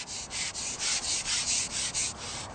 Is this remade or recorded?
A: recorded